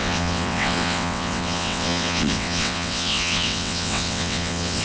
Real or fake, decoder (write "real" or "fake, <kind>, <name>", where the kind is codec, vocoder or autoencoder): fake, vocoder, WaveNeXt